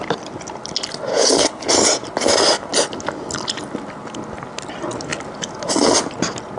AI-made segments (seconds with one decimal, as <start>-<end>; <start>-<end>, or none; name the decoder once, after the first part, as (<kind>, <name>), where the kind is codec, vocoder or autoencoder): 1.1-1.7 (codec, HILCodec)